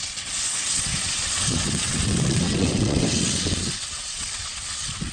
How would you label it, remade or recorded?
remade